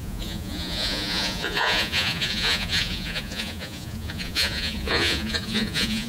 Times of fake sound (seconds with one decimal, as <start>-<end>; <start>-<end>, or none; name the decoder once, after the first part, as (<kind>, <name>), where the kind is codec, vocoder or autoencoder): 0.0-6.1 (vocoder, Vocos)